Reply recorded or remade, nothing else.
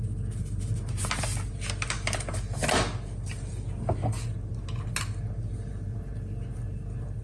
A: recorded